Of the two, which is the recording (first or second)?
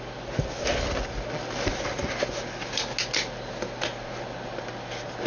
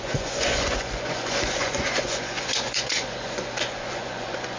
first